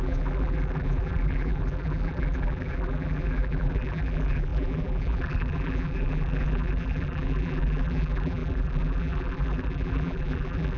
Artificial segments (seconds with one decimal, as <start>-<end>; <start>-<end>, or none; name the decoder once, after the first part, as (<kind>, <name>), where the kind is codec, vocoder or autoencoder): 0.0-10.8 (vocoder, BigVGAN v2)